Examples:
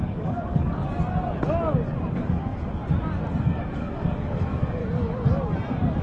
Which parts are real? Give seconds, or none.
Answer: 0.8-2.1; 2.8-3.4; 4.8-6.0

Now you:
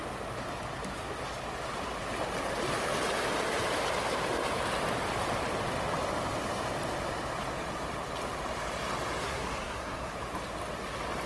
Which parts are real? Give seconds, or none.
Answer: 0.0-9.2; 10.1-11.3

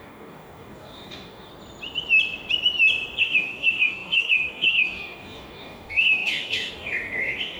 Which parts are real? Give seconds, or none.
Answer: 1.5-3.2

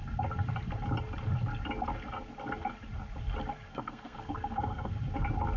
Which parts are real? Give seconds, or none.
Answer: 0.0-3.7; 4.9-5.6

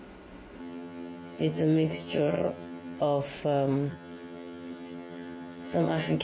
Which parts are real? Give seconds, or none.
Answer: 0.0-0.6; 3.0-3.9

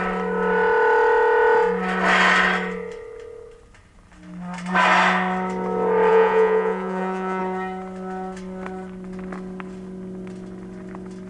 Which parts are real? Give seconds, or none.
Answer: 0.0-6.1; 7.4-11.3

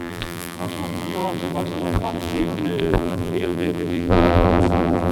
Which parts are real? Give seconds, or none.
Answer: none

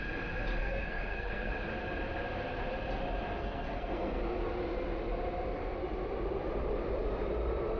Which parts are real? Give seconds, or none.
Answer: 0.0-0.6; 1.5-3.4; 4.4-7.8